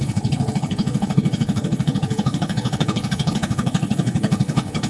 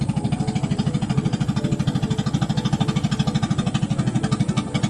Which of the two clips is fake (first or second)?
first